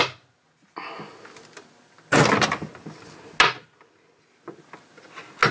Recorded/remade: recorded